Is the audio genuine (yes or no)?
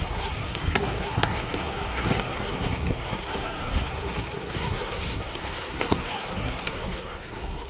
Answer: no